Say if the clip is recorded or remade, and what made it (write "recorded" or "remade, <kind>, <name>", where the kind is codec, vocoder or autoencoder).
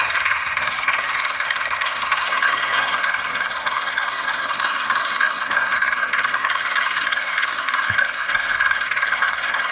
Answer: remade, codec, SNAC